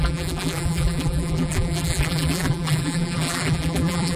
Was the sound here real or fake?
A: fake